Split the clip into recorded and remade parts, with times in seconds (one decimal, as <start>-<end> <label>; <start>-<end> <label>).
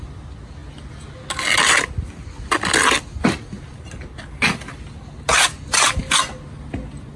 0.0-7.2 recorded